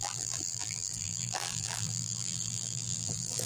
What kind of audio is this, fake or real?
fake